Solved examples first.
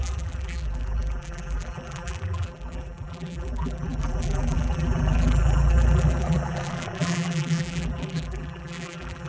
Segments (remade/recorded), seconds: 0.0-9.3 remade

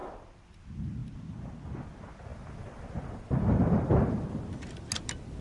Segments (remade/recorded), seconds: 0.0-0.6 remade; 0.6-2.3 recorded; 2.3-4.4 remade; 4.4-5.4 recorded

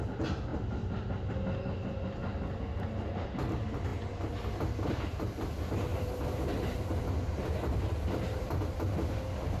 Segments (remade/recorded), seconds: 0.0-5.9 recorded; 5.9-9.1 remade; 9.1-9.6 recorded

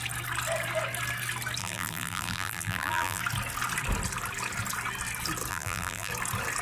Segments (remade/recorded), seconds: 0.0-1.6 recorded; 1.6-3.2 remade; 3.2-5.5 recorded; 5.5-6.1 remade; 6.1-6.6 recorded

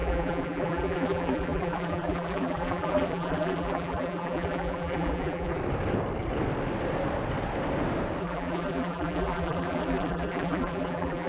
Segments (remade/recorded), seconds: 0.0-5.6 remade; 5.6-8.2 recorded; 8.2-11.3 remade

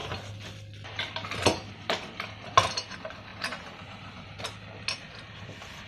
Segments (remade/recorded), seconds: 0.0-3.3 recorded; 3.3-4.4 remade; 4.4-5.9 recorded